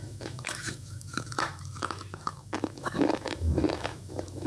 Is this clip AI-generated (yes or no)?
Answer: yes